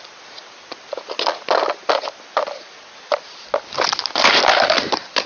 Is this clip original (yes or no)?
yes